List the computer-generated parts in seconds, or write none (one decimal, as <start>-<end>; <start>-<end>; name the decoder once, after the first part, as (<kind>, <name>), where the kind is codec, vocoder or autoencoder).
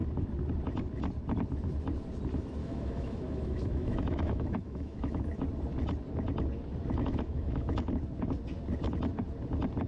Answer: 2.6-5.2 (autoencoder, DAC-VAE); 7.0-7.8